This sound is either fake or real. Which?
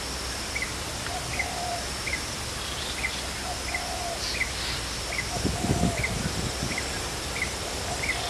real